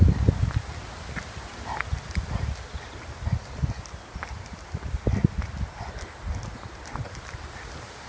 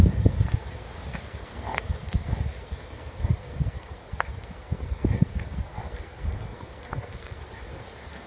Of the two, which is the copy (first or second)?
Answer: second